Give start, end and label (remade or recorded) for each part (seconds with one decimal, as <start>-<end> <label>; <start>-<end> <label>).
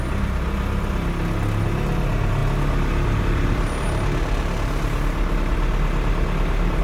0.0-6.8 recorded